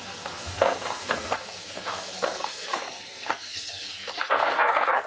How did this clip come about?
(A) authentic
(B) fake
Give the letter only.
B